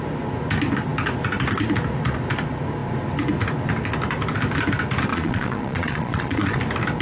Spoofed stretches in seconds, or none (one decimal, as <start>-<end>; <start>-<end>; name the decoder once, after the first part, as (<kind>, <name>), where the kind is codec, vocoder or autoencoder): 5.1-6.6 (vocoder, Vocos)